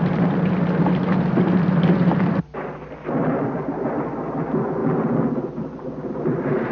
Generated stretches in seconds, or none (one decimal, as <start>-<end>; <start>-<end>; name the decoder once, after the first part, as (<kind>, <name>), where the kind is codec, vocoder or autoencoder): none